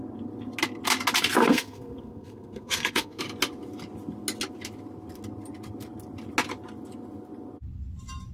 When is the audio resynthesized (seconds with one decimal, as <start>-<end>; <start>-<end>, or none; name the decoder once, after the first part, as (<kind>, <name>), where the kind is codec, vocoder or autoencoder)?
1.4-3.2 (codec, SNAC)